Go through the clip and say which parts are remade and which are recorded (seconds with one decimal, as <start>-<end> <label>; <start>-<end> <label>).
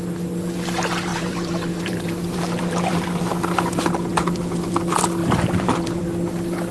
0.0-1.1 recorded; 1.1-3.2 remade; 3.2-4.1 recorded; 4.1-4.7 remade; 4.7-5.2 recorded; 5.2-6.0 remade; 6.0-6.7 recorded